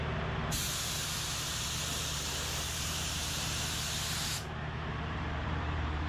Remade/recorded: remade